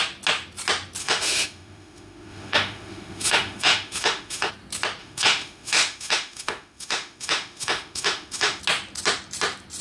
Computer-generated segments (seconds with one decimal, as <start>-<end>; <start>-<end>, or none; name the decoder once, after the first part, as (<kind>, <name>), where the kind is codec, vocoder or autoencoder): 1.0-4.5 (autoencoder, DAC-VAE); 5.0-8.6